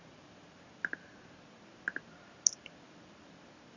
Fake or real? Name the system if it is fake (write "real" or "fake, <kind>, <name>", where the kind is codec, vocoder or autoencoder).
fake, vocoder, BigVGAN v2